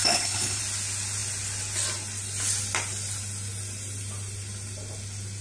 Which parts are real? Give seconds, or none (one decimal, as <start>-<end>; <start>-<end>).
0.6-5.4

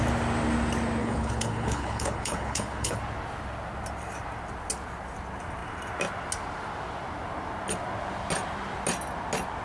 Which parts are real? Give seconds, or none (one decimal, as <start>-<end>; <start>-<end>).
0.0-1.0; 3.0-9.6